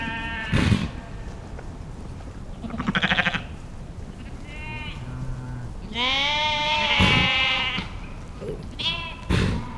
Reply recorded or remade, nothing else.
recorded